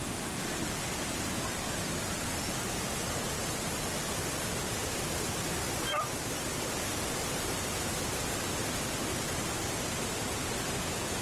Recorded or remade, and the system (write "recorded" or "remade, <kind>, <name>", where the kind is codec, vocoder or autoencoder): recorded